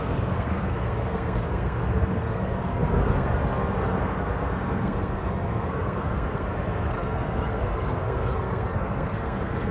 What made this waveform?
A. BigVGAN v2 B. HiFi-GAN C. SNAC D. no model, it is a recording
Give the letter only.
C